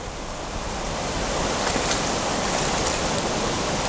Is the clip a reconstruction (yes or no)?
no